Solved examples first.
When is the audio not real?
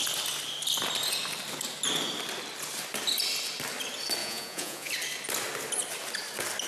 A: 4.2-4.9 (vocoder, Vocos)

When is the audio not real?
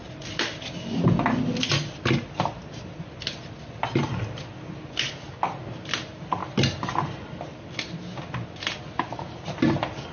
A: none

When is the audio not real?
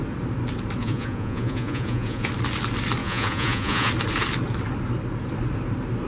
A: 0.8-2.3 (vocoder, Vocos); 3.0-3.9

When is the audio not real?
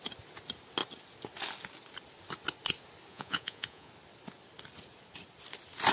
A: 3.1-3.9 (vocoder, Vocos)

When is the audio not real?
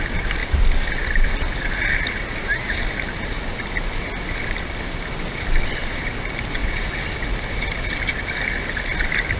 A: none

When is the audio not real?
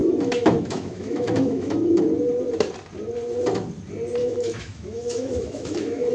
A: 0.0-2.0 (autoencoder, DAC-VAE); 4.2-6.1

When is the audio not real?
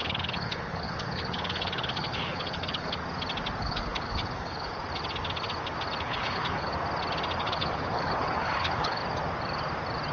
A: 0.0-3.0 (codec, HILCodec); 3.6-4.8; 6.0-6.7; 7.4-9.0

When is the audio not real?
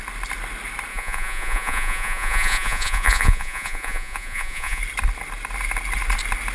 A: 0.9-4.8 (vocoder, Vocos)